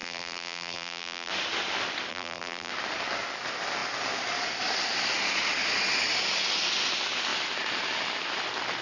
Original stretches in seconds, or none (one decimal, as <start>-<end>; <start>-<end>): 1.3-2.1; 2.7-8.8